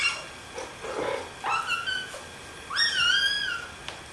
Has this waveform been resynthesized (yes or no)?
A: no